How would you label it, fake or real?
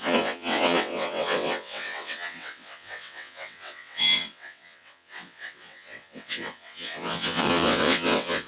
fake